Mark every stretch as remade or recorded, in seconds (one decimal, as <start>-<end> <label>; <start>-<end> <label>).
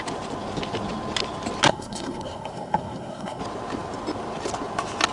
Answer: 0.0-1.7 recorded; 1.7-3.4 remade; 3.4-5.1 recorded